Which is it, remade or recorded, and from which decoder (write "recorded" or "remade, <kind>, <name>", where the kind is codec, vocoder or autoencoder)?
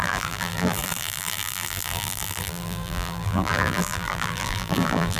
remade, vocoder, BigVGAN v2